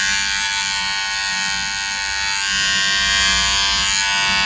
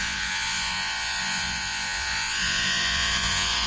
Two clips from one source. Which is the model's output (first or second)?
second